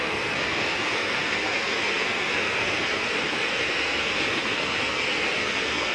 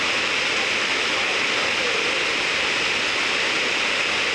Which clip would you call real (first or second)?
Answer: second